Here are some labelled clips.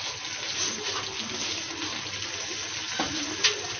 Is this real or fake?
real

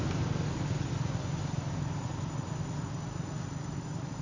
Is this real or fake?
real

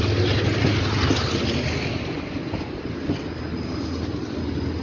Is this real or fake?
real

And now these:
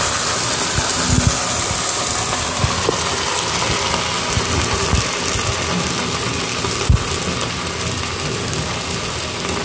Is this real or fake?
real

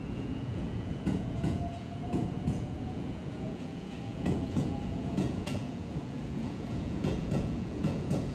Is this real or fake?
fake